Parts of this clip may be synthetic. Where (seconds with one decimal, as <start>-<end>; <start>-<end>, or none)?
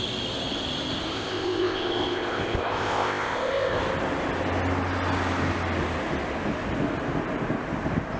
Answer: 1.1-3.8